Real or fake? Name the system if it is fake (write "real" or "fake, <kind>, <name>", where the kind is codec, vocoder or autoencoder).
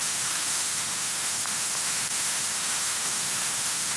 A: fake, autoencoder, DAC-VAE